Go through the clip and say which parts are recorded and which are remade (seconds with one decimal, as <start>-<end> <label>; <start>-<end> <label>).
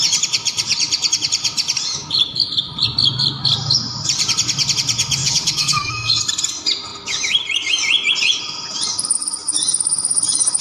0.0-5.2 recorded; 5.2-6.2 remade; 6.2-10.6 recorded